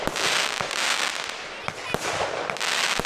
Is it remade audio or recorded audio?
recorded